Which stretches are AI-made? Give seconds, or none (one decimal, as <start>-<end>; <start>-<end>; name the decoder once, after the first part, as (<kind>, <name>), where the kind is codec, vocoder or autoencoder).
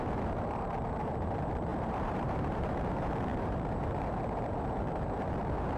0.0-5.8 (vocoder, BigVGAN v2)